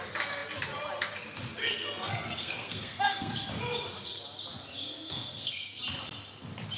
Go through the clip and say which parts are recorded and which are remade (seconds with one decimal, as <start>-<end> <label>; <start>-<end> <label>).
0.0-1.6 recorded; 1.6-3.3 remade; 3.3-4.8 recorded; 4.8-5.8 remade; 5.8-6.8 recorded